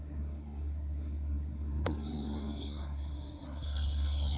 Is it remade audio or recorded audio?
remade